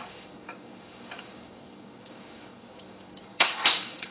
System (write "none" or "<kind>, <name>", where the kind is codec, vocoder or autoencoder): codec, DAC